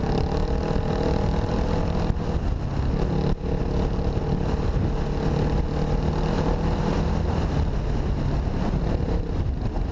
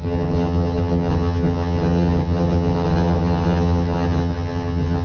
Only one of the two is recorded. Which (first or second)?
first